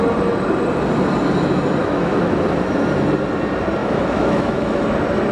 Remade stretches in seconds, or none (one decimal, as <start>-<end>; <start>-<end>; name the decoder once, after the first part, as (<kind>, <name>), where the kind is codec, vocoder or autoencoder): 1.8-2.3 (autoencoder, DAC-VAE); 3.8-4.8